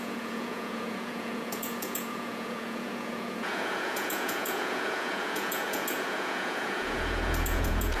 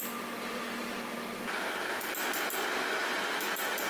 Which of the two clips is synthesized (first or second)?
first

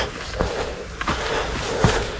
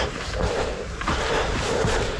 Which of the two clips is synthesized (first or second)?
second